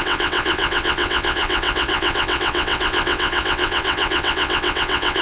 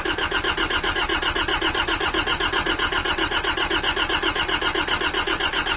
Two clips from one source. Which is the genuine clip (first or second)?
second